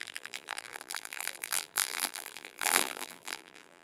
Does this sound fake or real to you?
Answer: fake